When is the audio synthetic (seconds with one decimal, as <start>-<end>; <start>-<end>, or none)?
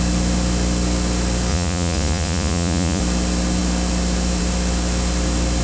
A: 1.5-3.0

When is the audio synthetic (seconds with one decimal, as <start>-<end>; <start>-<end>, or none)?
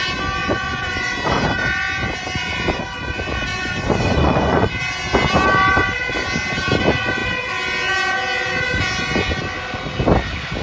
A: 0.4-1.1; 3.5-4.7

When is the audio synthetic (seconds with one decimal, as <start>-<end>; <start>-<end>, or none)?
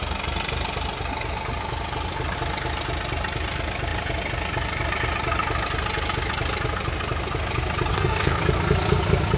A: 7.9-8.4